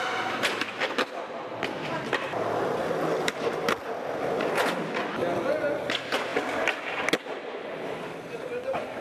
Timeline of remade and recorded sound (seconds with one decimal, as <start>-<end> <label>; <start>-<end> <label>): 0.0-9.0 recorded